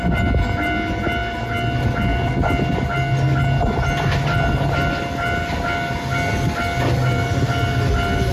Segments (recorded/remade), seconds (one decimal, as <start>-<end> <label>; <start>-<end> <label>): 0.0-8.3 recorded